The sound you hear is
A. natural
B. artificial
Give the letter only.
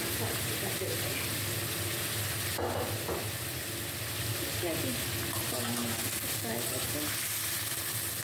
A